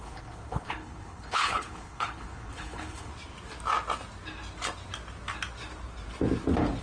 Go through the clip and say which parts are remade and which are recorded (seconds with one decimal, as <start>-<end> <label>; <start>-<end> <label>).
0.0-3.1 remade; 3.1-6.8 recorded